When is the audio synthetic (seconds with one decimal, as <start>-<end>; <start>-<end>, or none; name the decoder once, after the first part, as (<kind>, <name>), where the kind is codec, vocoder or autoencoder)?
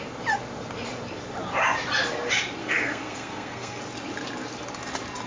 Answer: 2.6-3.8 (codec, SNAC)